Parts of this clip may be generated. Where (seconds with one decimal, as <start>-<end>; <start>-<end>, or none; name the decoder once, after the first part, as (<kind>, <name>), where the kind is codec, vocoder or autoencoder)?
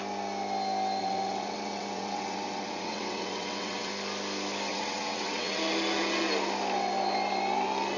1.0-3.9 (vocoder, WaveNeXt); 4.7-5.6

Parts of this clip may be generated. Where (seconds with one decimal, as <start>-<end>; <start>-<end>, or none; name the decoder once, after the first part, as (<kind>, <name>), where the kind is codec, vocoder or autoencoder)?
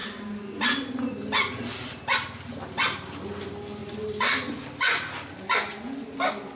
none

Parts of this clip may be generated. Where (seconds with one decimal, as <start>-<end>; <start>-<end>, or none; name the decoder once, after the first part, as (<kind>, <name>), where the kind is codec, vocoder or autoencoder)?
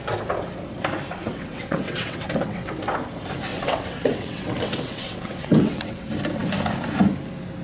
1.2-2.7 (vocoder, WaveNeXt); 3.5-6.0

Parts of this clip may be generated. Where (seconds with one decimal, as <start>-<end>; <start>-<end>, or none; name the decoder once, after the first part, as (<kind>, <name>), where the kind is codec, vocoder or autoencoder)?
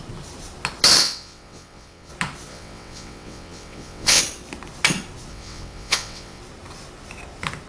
1.0-2.1 (vocoder, WaveNeXt); 2.5-4.2; 5.3-6.4